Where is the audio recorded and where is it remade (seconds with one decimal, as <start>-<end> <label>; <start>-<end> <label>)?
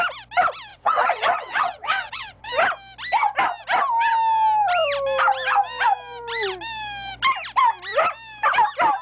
0.0-0.7 recorded; 0.7-2.5 remade; 2.5-9.0 recorded